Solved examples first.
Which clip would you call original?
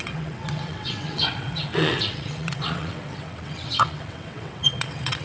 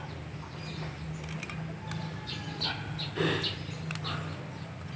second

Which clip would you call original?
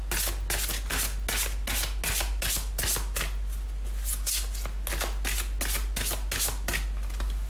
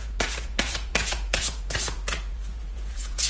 first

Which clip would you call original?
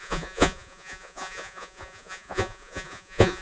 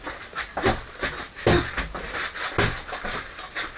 second